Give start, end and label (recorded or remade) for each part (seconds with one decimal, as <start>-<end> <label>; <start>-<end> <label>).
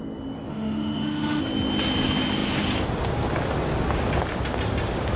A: 0.0-0.5 recorded; 0.5-1.4 remade; 1.4-5.2 recorded